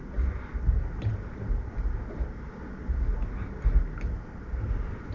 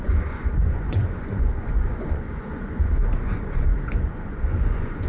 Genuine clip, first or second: first